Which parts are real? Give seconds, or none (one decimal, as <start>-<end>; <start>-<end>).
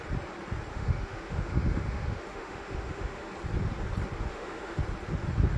0.0-0.7; 3.3-4.3; 4.8-5.6